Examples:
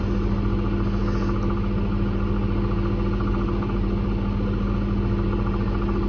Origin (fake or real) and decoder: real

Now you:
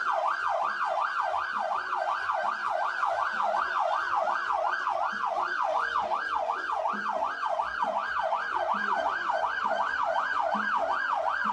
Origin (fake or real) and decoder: fake, vocoder, Vocos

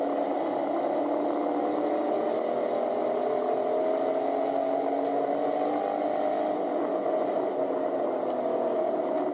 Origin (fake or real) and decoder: real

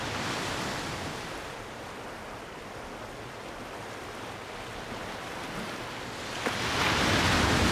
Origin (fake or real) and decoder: real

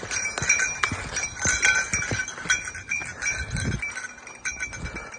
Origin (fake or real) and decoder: real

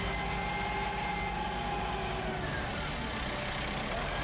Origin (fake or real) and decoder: real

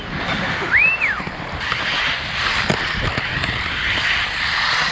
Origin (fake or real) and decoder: real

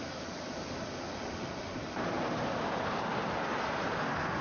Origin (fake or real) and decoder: real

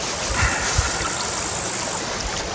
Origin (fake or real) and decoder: real